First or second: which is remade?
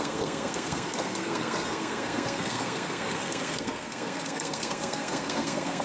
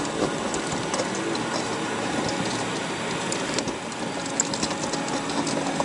first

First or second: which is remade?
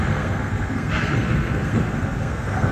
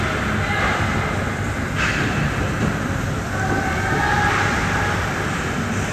first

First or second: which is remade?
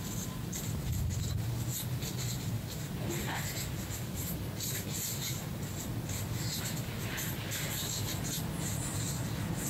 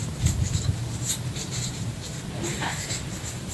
second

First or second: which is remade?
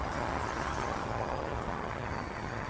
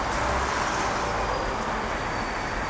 first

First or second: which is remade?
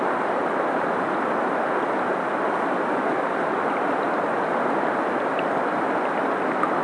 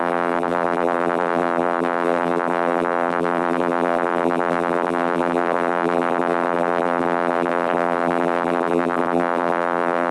second